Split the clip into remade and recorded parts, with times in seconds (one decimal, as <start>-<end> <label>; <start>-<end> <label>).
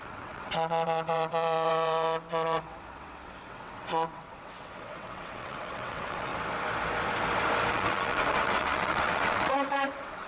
0.0-6.3 remade; 6.3-7.7 recorded; 7.7-10.3 remade